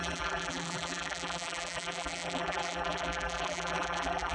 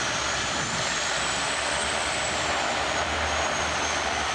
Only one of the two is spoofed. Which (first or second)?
first